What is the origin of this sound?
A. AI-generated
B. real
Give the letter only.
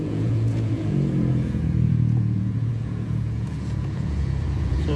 A